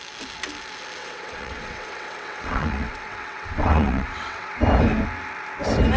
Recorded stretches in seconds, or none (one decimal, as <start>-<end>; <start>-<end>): 0.0-1.0; 4.6-6.0